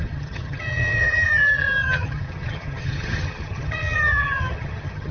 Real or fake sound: fake